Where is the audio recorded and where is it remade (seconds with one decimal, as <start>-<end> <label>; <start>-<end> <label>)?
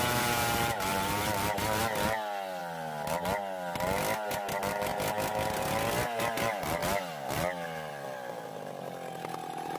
0.0-9.8 recorded